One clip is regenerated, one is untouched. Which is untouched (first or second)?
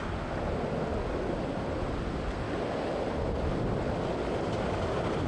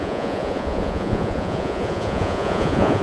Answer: first